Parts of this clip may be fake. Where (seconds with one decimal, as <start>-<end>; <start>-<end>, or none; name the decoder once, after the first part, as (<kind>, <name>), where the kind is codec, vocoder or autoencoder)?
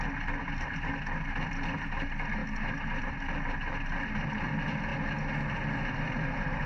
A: none